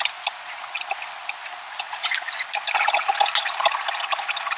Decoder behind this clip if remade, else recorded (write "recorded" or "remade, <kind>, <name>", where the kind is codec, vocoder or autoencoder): recorded